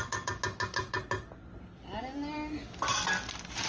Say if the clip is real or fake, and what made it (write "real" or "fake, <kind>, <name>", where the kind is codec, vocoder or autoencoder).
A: real